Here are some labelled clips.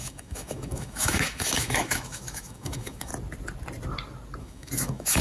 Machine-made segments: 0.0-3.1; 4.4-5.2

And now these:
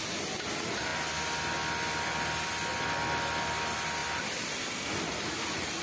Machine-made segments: none

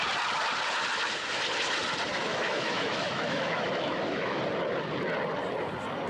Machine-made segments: 2.3-4.4

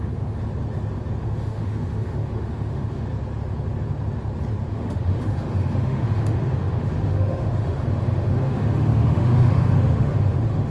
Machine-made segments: 0.0-0.4; 1.2-3.1; 4.7-10.7